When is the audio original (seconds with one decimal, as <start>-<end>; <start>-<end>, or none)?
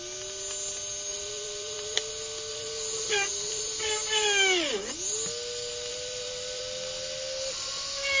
0.0-1.1; 2.1-2.5; 3.6-5.9; 6.6-8.2